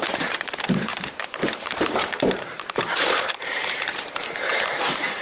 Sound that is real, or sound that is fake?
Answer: fake